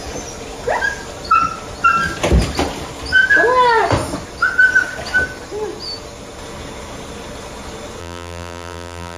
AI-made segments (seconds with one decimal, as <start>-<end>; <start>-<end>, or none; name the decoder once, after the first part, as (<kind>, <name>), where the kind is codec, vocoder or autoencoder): 8.0-9.2 (vocoder, BigVGAN v2)